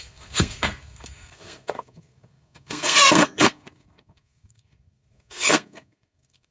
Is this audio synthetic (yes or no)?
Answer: yes